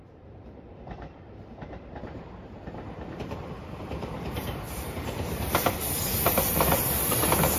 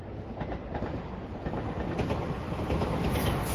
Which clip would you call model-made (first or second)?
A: first